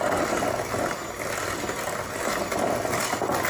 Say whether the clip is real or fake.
real